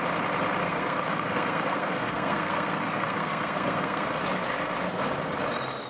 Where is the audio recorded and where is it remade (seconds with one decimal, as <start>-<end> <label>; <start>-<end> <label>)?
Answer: 0.0-0.6 recorded; 0.6-4.1 remade; 4.1-5.9 recorded